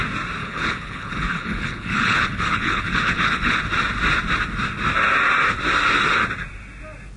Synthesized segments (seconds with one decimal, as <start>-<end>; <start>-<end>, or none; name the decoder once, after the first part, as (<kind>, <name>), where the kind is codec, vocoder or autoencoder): 0.4-3.6 (codec, HILCodec)